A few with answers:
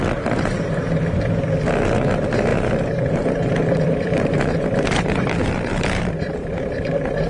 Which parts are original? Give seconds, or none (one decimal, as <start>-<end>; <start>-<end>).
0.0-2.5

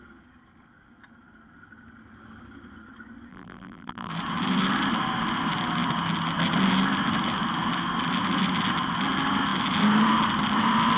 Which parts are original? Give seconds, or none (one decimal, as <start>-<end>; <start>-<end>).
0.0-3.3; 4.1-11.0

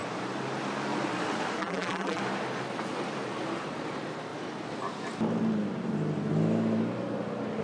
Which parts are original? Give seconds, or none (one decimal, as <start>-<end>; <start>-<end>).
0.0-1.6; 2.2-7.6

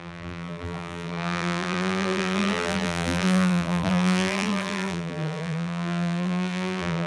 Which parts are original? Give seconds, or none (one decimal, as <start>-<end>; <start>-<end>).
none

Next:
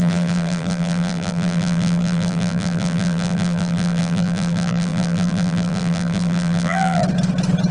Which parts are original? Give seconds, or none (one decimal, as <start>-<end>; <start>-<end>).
7.0-7.7